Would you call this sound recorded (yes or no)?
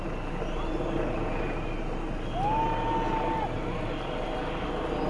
yes